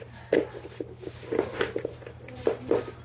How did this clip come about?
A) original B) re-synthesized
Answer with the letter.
A